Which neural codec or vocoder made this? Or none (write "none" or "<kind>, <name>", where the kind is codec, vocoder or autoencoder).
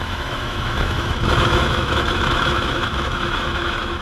autoencoder, DAC-VAE